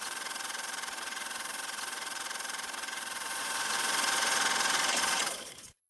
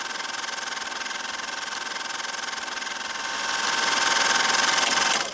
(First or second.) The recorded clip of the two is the second